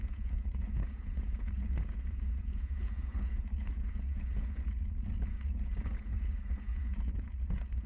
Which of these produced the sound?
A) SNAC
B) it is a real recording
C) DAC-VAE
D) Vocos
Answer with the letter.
D